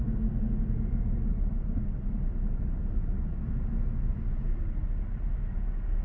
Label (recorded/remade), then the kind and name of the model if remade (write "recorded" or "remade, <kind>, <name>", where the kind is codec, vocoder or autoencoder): recorded